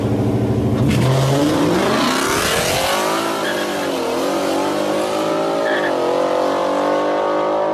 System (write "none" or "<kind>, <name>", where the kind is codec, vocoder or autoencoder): none